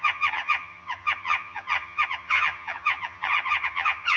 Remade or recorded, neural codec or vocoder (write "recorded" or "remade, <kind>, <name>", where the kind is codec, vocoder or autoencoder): remade, vocoder, HiFi-GAN